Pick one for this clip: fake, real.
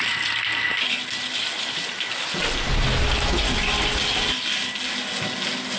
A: real